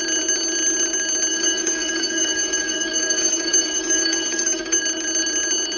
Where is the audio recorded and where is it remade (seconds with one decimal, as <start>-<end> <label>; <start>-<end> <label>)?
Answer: 0.0-1.3 recorded; 1.3-4.8 remade; 4.8-5.8 recorded